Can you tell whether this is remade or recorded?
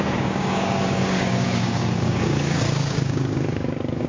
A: remade